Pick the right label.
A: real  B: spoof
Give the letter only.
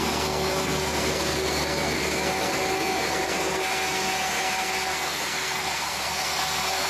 B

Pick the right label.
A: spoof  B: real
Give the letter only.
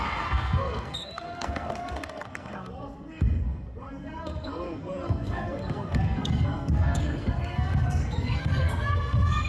A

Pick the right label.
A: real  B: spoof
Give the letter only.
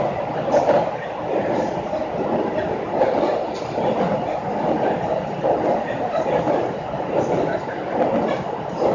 A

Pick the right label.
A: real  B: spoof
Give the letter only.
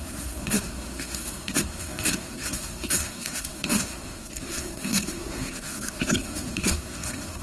B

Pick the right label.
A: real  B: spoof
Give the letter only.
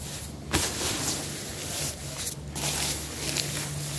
A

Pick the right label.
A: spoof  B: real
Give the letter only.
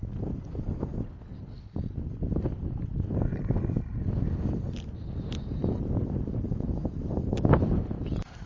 B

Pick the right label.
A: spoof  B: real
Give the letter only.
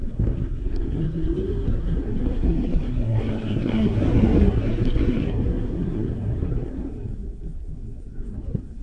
A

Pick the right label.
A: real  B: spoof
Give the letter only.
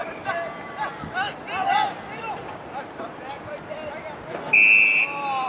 A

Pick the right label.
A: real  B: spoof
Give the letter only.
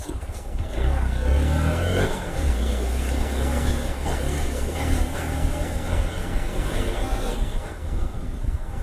B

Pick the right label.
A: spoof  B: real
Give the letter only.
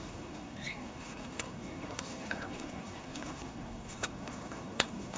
A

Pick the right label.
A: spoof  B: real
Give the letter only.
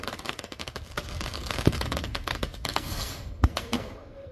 A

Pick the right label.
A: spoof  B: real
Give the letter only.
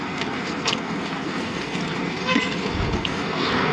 A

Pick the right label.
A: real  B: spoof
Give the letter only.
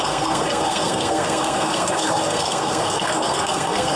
B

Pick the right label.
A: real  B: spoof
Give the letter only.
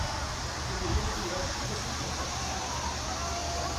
A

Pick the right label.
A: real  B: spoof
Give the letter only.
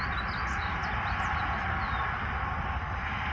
A